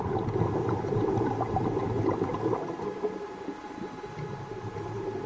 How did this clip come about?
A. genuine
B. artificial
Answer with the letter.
A